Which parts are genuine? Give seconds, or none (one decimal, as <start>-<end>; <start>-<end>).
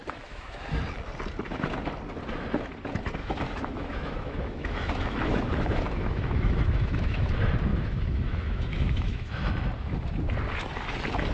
0.6-3.2; 7.3-7.7; 9.5-11.3